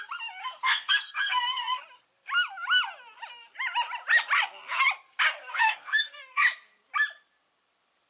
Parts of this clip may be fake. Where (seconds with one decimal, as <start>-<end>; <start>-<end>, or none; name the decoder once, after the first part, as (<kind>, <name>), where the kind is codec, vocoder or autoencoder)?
0.4-1.8 (codec, SNAC); 5.5-6.4